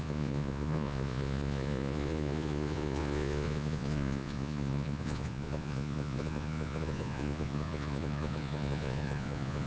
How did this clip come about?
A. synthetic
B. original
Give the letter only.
A